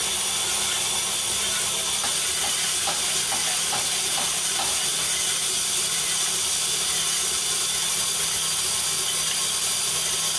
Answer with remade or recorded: recorded